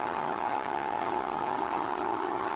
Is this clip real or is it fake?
fake